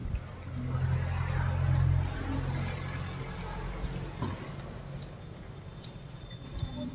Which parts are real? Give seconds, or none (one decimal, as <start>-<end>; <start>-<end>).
0.0-6.9